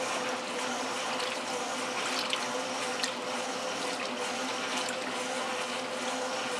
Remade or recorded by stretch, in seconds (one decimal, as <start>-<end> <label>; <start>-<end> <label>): 0.0-6.6 recorded